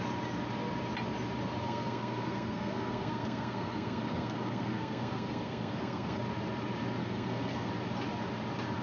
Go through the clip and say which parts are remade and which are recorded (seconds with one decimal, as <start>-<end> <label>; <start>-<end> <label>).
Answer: 0.0-1.6 recorded; 1.6-6.2 remade; 6.2-7.0 recorded; 7.0-7.7 remade; 7.7-8.8 recorded